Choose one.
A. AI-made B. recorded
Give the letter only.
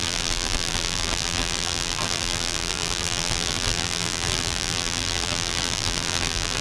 A